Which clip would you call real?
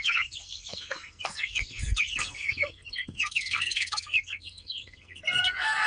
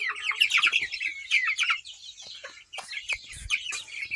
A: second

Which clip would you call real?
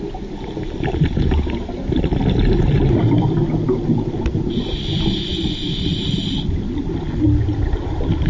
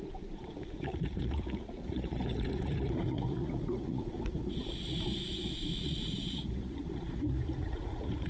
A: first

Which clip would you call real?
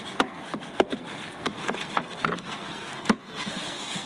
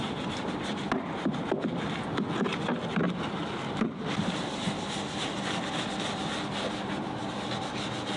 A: second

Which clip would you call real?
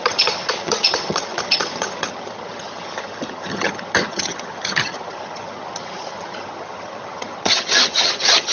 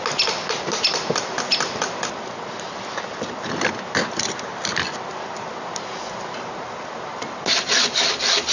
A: second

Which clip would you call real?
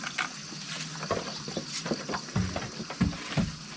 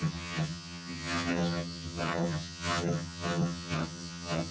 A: first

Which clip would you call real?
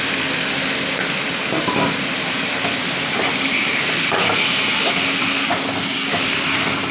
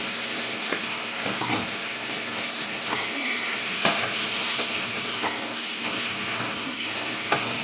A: first